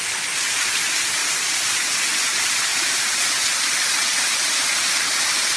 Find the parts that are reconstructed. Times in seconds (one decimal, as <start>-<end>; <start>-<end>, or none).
2.7-3.6; 4.0-5.6